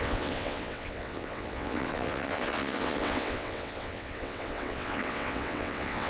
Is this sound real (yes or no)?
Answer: no